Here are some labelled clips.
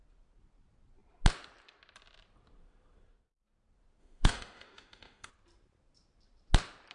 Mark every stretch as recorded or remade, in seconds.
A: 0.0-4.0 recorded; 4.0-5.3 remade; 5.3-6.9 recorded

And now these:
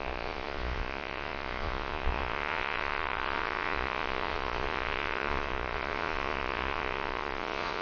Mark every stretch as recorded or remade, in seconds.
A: 0.0-7.8 remade

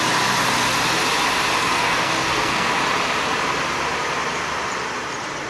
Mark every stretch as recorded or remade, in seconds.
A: 0.0-1.6 recorded; 1.6-2.7 remade; 2.7-5.5 recorded

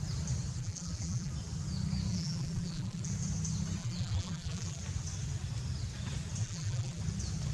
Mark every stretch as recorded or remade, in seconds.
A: 0.0-0.6 recorded; 0.6-1.3 remade; 1.3-2.1 recorded; 2.1-3.1 remade; 3.1-3.8 recorded; 3.8-4.8 remade; 4.8-6.4 recorded; 6.4-7.0 remade; 7.0-7.5 recorded

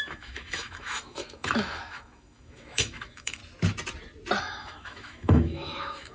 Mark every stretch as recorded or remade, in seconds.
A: 0.0-3.4 remade; 3.4-4.4 recorded; 4.4-6.1 remade

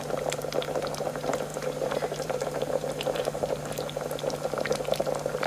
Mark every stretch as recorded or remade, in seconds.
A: 0.0-1.5 recorded; 1.5-3.6 remade; 3.6-5.5 recorded